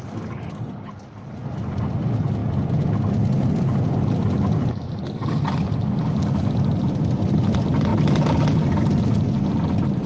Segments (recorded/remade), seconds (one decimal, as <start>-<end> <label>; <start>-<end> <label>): 0.0-10.1 recorded